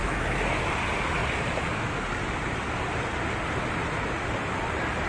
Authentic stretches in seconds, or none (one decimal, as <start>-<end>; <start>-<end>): 0.7-5.1